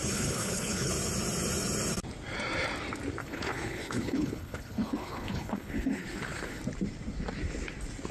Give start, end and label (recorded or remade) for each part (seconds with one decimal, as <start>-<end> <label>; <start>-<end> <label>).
0.0-0.9 remade; 0.9-3.2 recorded; 3.2-6.6 remade; 6.6-8.1 recorded

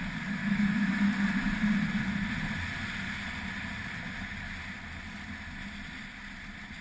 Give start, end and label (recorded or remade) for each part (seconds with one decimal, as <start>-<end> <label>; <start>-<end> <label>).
0.0-0.4 recorded; 0.4-1.0 remade; 1.0-6.8 recorded